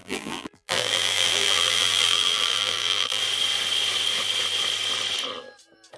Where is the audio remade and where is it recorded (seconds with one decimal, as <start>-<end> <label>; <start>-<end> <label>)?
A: 0.0-3.2 remade; 3.2-6.0 recorded